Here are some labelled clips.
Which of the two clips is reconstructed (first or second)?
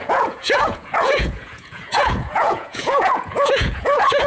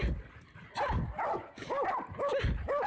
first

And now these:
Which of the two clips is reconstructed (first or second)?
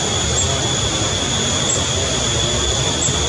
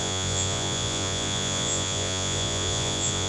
second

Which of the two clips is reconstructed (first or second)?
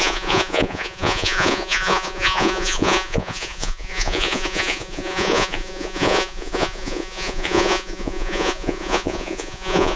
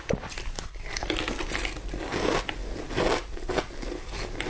first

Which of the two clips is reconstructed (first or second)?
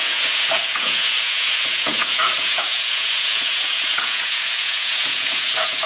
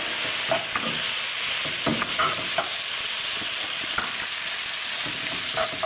first